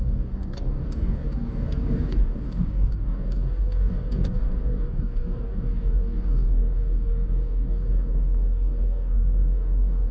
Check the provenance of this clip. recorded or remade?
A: remade